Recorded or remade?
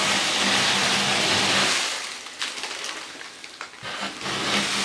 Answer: recorded